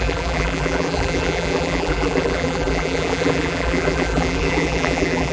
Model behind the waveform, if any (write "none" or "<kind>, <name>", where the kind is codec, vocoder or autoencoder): vocoder, BigVGAN v2